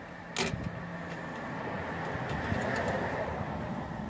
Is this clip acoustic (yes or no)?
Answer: yes